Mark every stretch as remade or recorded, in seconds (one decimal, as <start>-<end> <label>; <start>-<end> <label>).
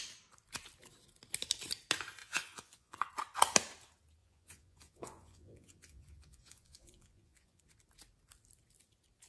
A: 0.0-2.2 recorded; 2.2-3.1 remade; 3.1-4.2 recorded; 4.2-7.6 remade; 7.6-9.3 recorded